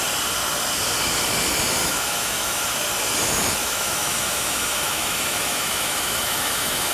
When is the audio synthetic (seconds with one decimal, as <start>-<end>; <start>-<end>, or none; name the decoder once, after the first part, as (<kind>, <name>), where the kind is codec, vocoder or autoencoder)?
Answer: 1.8-2.6 (autoencoder, DAC-VAE); 3.6-6.9